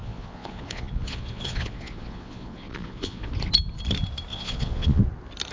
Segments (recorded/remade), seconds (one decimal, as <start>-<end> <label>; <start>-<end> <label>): 0.0-3.3 remade; 3.3-4.3 recorded; 4.3-5.0 remade; 5.0-5.5 recorded